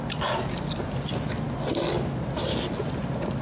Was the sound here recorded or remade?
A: recorded